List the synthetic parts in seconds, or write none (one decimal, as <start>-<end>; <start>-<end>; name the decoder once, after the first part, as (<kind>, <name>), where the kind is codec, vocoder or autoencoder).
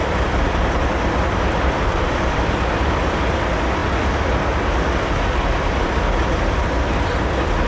0.0-7.7 (vocoder, BigVGAN v2)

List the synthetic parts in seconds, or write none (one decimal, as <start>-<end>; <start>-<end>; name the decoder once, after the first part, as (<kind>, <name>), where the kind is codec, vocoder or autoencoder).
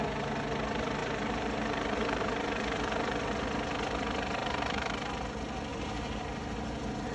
1.0-2.9 (vocoder, BigVGAN v2); 4.4-5.2; 5.7-7.1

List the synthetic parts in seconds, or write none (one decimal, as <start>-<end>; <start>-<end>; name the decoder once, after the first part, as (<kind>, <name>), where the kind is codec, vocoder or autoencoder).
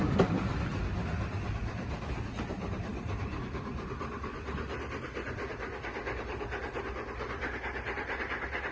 2.9-3.6 (vocoder, BigVGAN v2)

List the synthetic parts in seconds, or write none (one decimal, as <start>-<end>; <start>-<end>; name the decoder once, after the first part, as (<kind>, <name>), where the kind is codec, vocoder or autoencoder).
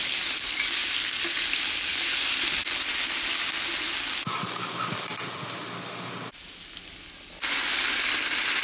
none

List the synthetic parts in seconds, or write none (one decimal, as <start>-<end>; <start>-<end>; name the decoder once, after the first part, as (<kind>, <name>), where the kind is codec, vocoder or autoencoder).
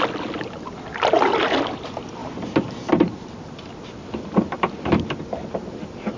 none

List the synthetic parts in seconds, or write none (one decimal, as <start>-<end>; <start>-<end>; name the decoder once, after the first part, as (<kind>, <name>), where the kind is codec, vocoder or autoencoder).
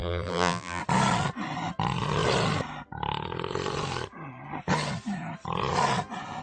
0.0-0.8 (vocoder, BigVGAN v2)